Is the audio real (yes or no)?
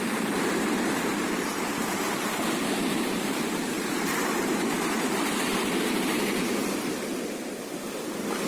no